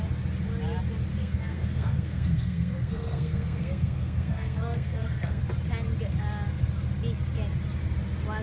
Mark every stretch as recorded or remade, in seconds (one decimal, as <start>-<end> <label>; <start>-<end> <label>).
0.0-1.1 recorded; 1.1-5.4 remade; 5.4-8.4 recorded